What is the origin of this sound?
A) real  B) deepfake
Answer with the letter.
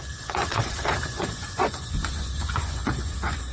B